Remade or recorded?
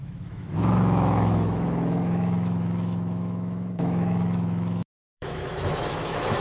remade